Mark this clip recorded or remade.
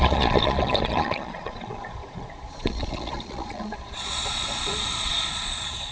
remade